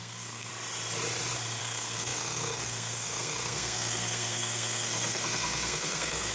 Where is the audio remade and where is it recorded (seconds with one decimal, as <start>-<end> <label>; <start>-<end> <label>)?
0.0-0.5 remade; 0.5-1.6 recorded; 1.6-6.3 remade